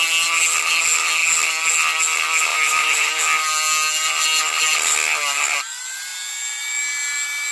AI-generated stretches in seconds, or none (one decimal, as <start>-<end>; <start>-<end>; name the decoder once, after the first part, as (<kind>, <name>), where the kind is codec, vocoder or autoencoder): 2.5-3.2 (vocoder, BigVGAN v2)